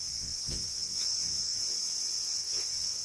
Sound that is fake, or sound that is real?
fake